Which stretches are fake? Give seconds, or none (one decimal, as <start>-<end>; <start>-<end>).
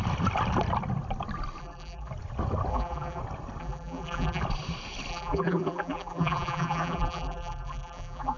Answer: 1.6-2.1; 2.7-3.2; 3.6-4.4; 5.1-8.4